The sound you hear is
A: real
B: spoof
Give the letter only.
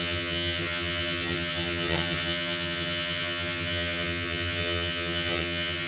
B